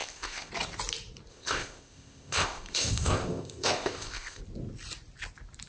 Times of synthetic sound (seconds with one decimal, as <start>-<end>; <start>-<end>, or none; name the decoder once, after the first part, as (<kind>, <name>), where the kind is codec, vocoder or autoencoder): 0.0-0.5 (codec, ZipCodec); 1.3-4.4